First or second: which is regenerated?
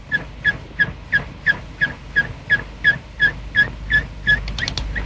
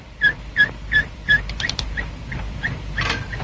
second